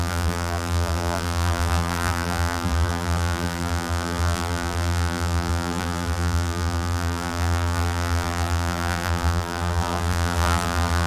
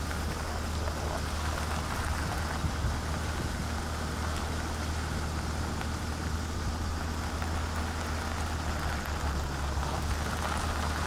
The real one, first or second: second